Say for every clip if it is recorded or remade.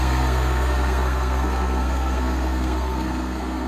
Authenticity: remade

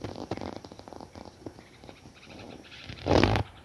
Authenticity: remade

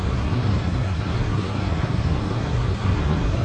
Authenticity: remade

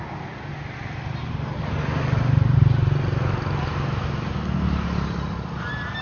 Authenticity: recorded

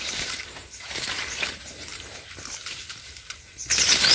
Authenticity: recorded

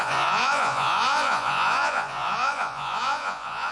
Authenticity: remade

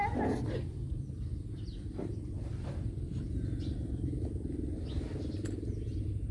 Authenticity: recorded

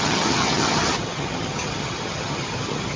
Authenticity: remade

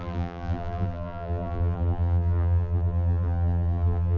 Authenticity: remade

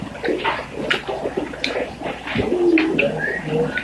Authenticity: recorded